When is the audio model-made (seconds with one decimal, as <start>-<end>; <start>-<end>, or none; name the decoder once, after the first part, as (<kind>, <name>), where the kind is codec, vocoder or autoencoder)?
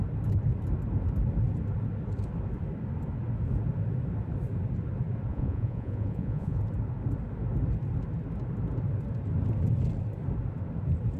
5.3-6.6 (vocoder, Vocos)